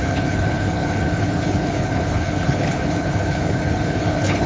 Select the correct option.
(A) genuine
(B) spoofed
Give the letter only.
B